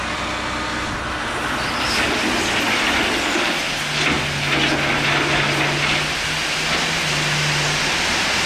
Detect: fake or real real